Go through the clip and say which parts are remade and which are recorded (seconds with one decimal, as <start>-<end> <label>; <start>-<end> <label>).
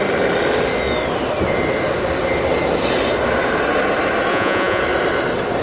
0.0-4.3 recorded; 4.3-4.8 remade; 4.8-5.6 recorded